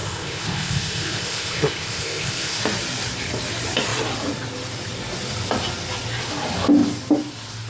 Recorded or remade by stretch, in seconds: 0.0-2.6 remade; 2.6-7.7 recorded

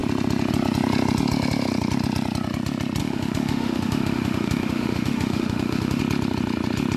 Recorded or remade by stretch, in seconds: 0.0-3.0 recorded; 3.0-6.0 remade; 6.0-7.0 recorded

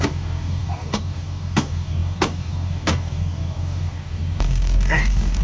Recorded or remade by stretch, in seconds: 0.0-5.4 remade